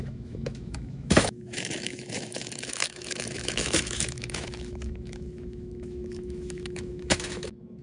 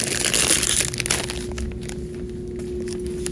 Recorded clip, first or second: second